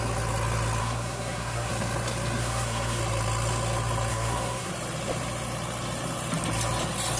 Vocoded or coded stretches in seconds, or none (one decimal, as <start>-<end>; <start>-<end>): 0.8-1.7; 2.4-3.0; 4.1-4.7

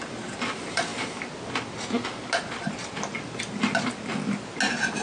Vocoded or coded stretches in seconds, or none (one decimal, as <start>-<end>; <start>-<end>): none

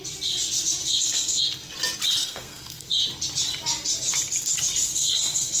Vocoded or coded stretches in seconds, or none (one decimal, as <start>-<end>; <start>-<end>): 0.8-1.4; 2.2-2.9; 4.9-5.6

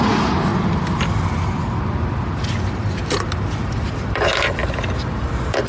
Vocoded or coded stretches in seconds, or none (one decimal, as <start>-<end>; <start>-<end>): 0.0-0.5; 3.9-4.6; 5.2-5.7